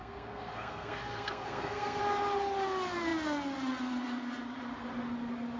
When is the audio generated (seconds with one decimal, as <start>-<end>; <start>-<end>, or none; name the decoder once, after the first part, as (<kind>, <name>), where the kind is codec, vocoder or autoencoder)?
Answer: 0.0-2.0 (codec, SNAC)